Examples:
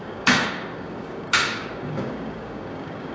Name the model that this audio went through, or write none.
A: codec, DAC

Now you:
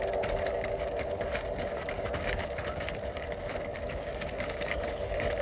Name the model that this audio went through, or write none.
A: codec, DAC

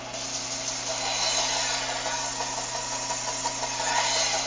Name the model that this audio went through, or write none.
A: none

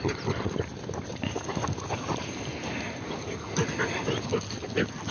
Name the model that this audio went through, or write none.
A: none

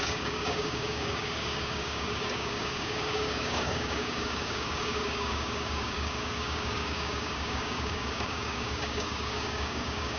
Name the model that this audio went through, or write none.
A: codec, DAC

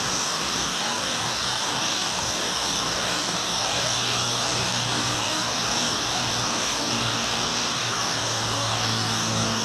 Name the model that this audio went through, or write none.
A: codec, DAC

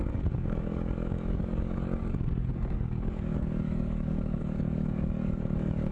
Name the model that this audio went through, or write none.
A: codec, DAC